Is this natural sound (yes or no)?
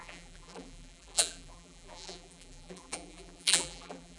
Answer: no